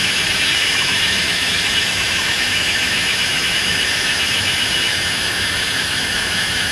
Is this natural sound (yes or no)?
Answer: no